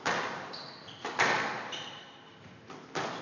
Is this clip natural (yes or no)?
yes